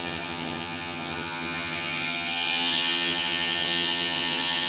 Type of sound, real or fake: fake